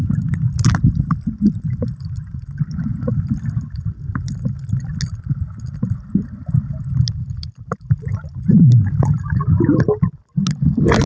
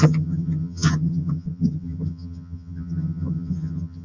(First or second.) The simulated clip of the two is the second